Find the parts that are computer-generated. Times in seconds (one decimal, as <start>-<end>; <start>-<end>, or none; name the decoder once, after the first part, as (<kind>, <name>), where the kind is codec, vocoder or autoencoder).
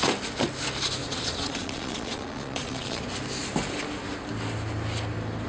1.0-3.0 (vocoder, Vocos)